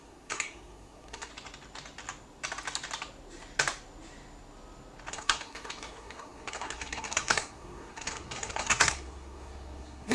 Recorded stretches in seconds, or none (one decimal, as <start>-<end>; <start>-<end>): 1.3-5.1